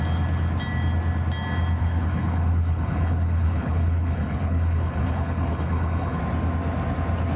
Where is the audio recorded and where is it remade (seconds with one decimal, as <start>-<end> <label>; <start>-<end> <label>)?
0.0-1.8 recorded; 1.8-6.2 remade; 6.2-7.4 recorded